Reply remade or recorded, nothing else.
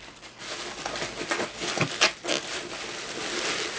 recorded